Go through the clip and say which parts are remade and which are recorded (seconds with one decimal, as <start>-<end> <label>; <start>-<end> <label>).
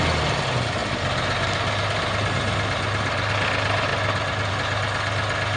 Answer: 0.0-5.6 recorded